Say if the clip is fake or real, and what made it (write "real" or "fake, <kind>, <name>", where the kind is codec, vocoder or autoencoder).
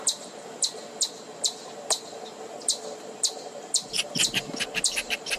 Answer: real